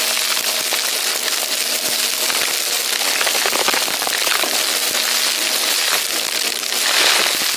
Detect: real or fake real